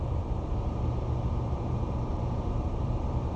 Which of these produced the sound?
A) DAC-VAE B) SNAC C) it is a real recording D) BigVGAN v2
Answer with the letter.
D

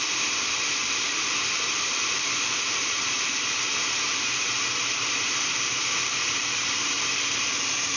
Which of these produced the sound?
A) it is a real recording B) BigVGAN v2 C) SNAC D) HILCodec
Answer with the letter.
B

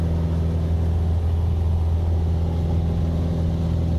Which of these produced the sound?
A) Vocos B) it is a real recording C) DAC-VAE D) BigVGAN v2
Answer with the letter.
B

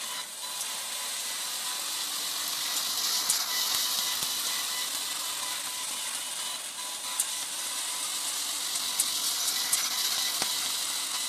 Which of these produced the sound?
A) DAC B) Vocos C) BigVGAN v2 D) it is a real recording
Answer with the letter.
D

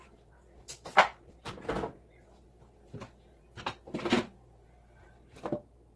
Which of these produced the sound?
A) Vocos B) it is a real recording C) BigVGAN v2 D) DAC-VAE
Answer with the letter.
B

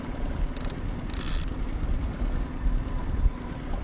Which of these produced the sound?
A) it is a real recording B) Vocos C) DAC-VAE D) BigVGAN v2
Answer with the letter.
D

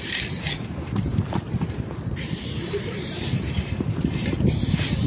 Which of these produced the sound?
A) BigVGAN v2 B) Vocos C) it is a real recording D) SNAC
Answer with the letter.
A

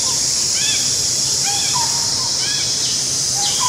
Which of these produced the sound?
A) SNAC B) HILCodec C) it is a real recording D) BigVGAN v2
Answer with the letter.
D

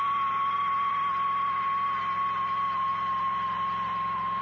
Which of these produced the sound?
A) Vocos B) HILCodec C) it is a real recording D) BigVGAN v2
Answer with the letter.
D